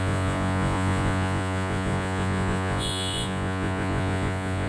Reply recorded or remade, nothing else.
remade